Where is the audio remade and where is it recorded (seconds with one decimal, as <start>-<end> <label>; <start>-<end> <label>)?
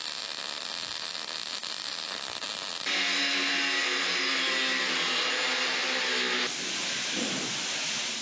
0.0-8.2 recorded